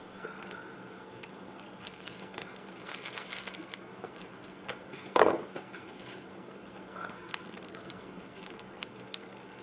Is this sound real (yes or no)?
no